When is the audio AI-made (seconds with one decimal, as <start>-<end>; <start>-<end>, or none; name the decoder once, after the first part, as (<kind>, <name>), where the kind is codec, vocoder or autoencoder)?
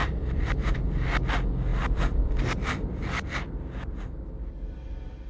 0.0-0.7 (vocoder, BigVGAN v2); 1.7-3.5